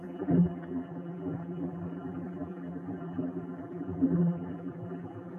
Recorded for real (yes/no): no